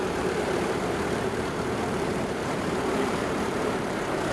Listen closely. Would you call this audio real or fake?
fake